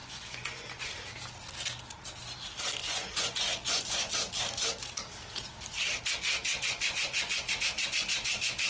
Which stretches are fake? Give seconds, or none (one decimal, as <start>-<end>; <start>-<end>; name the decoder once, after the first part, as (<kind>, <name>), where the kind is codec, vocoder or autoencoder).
0.0-0.9 (vocoder, Vocos); 2.8-4.1; 6.5-7.5